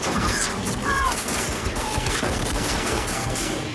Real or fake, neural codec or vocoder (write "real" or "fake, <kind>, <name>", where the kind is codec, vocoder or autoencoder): fake, codec, SNAC